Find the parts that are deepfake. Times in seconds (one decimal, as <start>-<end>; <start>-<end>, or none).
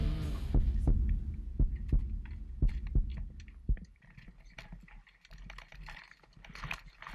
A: none